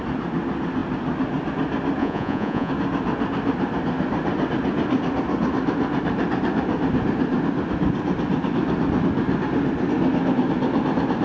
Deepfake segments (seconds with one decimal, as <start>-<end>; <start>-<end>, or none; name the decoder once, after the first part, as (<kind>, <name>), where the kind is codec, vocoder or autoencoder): 2.0-2.7 (vocoder, Vocos)